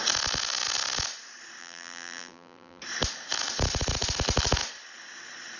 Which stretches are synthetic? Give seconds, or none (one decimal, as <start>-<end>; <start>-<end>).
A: 1.6-2.8